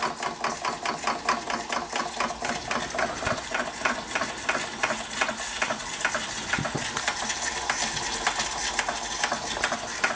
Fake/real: real